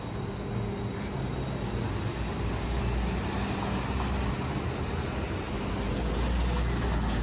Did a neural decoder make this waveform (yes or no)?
no